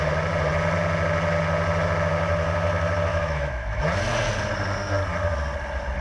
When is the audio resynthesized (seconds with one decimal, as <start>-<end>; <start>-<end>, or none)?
3.1-3.8

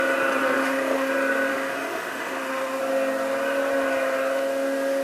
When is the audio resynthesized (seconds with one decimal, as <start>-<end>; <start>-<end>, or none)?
0.6-1.1; 1.5-2.8

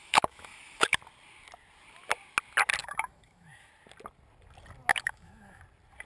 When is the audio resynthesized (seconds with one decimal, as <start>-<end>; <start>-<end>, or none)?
0.0-1.0; 2.8-3.7; 4.9-5.6

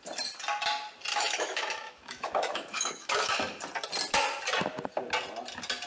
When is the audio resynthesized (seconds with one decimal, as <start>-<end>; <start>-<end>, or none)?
1.1-3.3

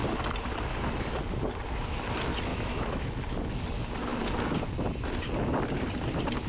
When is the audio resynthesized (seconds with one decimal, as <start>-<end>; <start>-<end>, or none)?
2.5-3.1

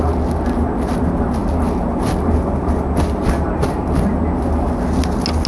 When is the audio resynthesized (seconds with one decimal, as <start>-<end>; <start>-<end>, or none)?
none

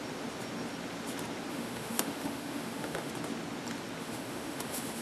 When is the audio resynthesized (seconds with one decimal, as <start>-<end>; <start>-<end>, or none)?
1.5-3.1; 4.0-5.0

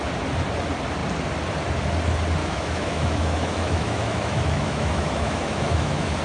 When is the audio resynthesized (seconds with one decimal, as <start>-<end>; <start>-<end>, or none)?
2.4-6.2